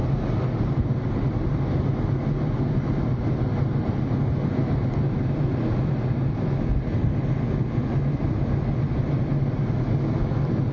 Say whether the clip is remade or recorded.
recorded